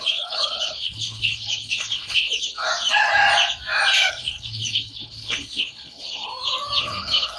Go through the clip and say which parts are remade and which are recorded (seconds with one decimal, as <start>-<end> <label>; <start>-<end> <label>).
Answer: 0.0-2.7 remade; 2.7-4.1 recorded; 4.1-6.3 remade; 6.3-6.8 recorded; 6.8-7.4 remade